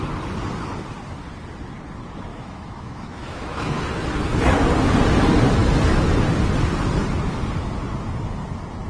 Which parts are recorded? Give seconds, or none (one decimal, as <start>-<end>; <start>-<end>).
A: 0.0-2.3; 3.8-8.9